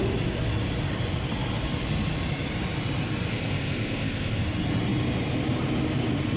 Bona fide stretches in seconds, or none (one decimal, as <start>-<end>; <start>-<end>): 0.0-3.3; 4.4-6.4